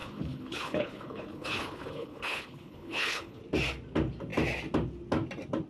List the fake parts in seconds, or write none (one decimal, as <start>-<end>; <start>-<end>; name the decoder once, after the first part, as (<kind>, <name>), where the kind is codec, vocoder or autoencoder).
0.0-3.4 (codec, HILCodec)